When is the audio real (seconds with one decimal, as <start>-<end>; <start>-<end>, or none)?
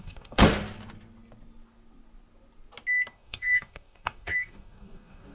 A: 0.4-3.1